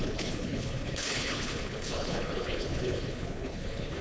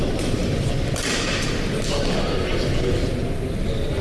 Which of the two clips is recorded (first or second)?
second